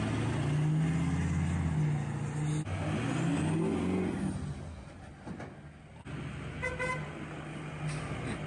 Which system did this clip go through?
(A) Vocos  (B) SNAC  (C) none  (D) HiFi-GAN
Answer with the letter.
C